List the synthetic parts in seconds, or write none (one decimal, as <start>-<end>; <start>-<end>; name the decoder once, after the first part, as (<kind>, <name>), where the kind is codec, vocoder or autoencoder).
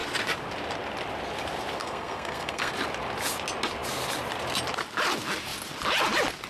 1.8-2.7 (codec, SNAC)